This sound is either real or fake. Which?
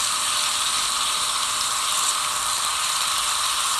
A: real